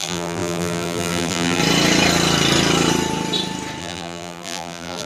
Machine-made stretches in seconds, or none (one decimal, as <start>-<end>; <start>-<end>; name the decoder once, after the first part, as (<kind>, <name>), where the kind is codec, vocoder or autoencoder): 0.0-1.6 (vocoder, BigVGAN v2); 3.8-5.1